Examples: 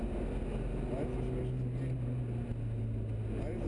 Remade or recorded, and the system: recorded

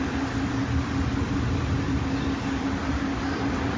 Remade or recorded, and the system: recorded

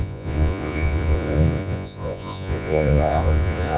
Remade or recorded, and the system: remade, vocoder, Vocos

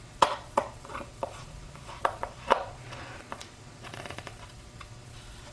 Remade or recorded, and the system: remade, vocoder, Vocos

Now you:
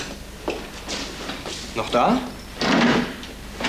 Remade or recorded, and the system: recorded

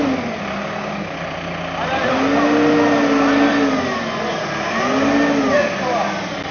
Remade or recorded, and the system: recorded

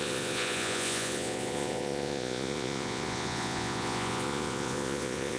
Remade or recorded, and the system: remade, vocoder, Vocos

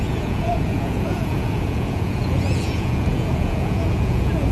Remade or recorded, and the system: remade, vocoder, Vocos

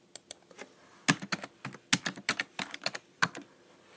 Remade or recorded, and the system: recorded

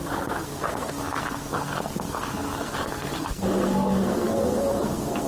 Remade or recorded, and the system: remade, codec, SNAC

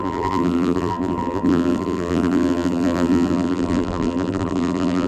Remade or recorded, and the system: remade, vocoder, BigVGAN v2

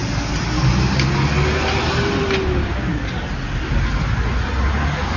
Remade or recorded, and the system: recorded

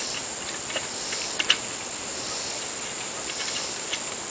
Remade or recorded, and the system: recorded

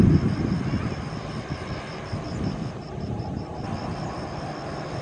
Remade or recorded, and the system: recorded